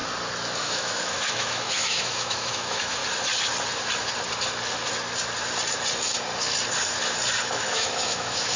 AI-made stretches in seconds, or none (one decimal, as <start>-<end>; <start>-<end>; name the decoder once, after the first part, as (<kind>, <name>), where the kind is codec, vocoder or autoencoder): 0.6-3.0 (autoencoder, DAC-VAE); 7.4-8.6